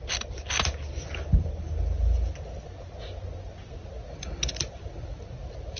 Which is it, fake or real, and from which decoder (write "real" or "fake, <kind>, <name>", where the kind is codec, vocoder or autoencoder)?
real